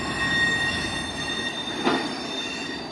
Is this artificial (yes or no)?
no